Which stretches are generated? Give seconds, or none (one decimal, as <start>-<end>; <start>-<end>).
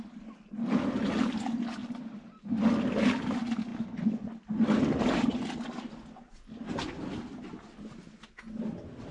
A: none